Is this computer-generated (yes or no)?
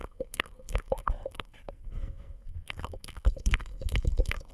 yes